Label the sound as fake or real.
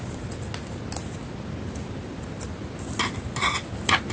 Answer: real